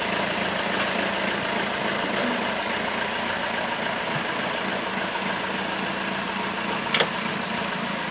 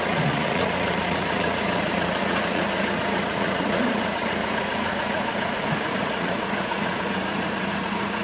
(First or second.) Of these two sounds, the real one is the first